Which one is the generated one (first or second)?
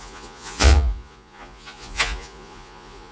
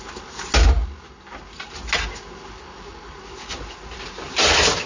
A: first